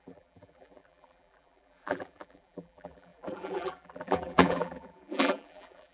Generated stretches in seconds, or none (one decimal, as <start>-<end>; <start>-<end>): 0.0-5.9

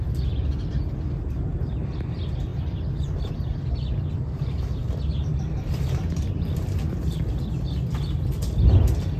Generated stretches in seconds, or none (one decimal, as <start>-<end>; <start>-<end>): 2.5-3.3

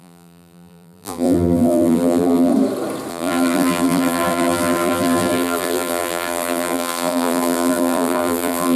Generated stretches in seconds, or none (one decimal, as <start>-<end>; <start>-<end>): 0.0-2.5; 3.1-8.8

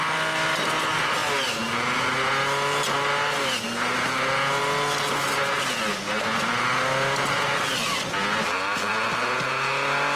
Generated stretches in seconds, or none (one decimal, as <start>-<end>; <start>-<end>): none